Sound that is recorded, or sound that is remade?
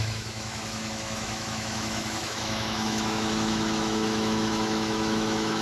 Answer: remade